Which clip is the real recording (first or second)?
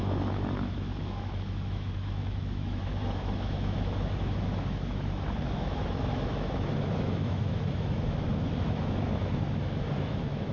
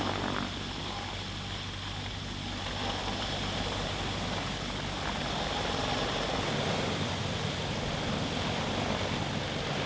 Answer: second